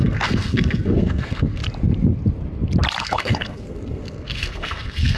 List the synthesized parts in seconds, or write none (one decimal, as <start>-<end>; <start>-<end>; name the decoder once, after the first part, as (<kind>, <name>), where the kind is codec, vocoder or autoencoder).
0.0-1.6 (codec, SNAC); 3.0-5.2